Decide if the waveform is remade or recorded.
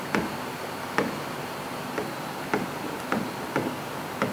recorded